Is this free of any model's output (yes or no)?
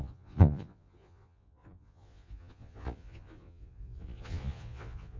no